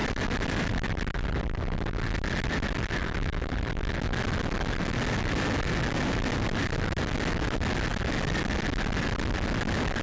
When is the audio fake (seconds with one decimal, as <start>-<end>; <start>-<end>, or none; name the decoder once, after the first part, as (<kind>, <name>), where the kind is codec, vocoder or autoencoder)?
3.0-3.5 (autoencoder, DAC-VAE)